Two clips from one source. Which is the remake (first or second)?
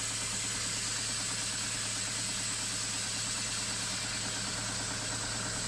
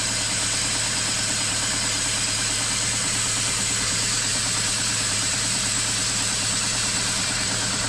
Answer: second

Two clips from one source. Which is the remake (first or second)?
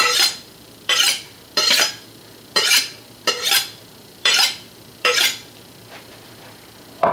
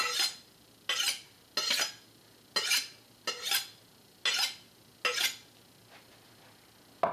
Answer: first